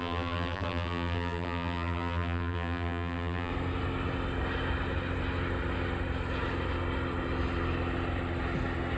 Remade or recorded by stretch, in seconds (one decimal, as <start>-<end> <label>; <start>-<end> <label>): 0.0-3.5 remade; 3.5-9.0 recorded